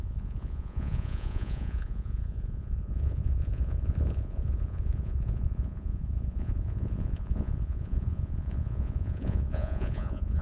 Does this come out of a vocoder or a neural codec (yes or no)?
yes